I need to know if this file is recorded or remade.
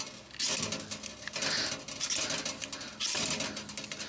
recorded